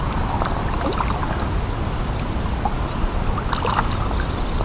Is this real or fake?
real